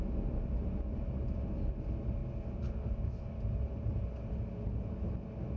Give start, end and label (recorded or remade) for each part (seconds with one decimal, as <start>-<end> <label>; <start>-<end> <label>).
0.0-5.6 recorded